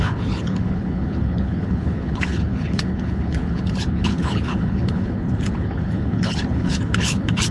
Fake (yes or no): yes